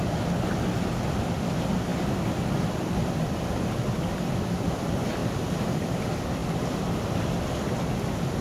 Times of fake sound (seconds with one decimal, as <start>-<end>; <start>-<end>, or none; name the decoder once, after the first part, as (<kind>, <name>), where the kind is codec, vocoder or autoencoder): 1.9-3.4 (vocoder, BigVGAN v2); 5.2-6.0